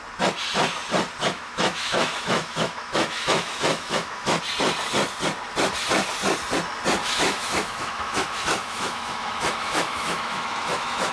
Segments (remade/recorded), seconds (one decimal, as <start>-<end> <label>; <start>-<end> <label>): 0.0-1.2 recorded; 1.2-4.4 remade; 4.4-7.0 recorded; 7.0-11.1 remade